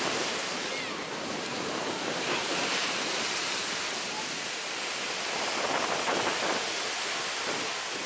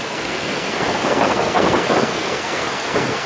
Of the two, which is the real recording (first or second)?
first